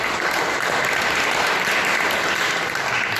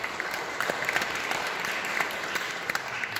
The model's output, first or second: second